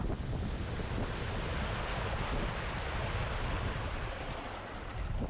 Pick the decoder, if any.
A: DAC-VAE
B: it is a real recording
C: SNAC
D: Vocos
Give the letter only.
B